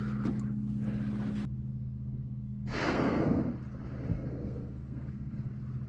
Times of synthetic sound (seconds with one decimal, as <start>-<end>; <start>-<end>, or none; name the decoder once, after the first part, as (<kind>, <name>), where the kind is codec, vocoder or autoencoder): 1.7-3.5 (codec, SNAC); 4.1-5.5